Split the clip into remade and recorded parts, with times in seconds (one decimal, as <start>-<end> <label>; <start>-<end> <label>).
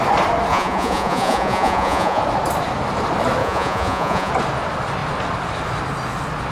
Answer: 0.0-0.5 recorded; 0.5-2.2 remade; 2.2-3.4 recorded; 3.4-4.3 remade; 4.3-6.5 recorded